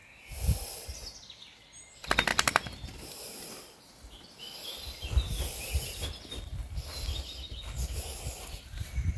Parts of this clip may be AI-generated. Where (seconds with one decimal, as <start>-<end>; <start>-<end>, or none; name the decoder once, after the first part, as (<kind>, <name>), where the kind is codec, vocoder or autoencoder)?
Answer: 2.3-5.1 (vocoder, BigVGAN v2)